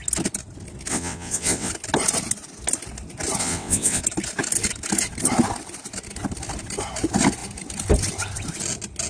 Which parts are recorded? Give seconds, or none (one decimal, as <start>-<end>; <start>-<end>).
0.0-0.9; 1.7-3.4; 4.0-9.1